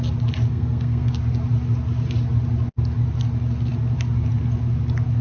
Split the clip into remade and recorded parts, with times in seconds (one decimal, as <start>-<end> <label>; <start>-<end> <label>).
0.0-0.5 recorded; 0.5-1.1 remade; 1.1-5.2 recorded

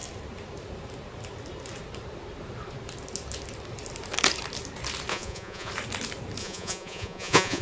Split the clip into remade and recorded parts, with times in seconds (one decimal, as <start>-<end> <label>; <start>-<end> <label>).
0.0-5.1 recorded; 5.1-5.7 remade; 5.7-6.4 recorded; 6.4-7.6 remade

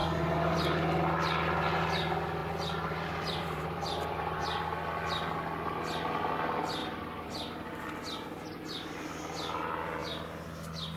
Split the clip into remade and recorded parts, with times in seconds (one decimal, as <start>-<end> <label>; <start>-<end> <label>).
0.0-0.8 remade; 0.8-2.4 recorded; 2.4-4.4 remade; 4.4-6.8 recorded; 6.8-7.7 remade; 7.7-11.0 recorded

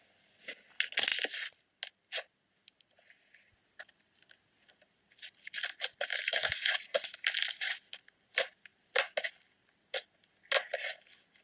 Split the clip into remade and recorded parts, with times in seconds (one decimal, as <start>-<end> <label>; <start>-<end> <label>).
0.0-6.1 recorded; 6.1-6.7 remade; 6.7-11.4 recorded

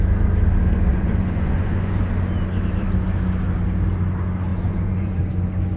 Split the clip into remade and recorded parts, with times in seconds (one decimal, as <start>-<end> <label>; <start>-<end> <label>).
0.0-0.9 recorded; 0.9-2.0 remade; 2.0-4.5 recorded; 4.5-5.2 remade; 5.2-5.8 recorded

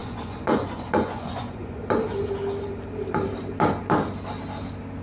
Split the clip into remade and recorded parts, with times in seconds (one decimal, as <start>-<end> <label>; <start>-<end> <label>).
0.0-1.8 remade; 1.8-5.0 recorded

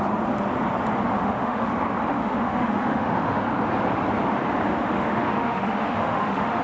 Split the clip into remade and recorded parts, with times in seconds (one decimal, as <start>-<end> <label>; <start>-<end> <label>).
0.0-1.2 recorded; 1.2-1.7 remade; 1.7-2.1 recorded; 2.1-3.4 remade; 3.4-4.7 recorded; 4.7-6.6 remade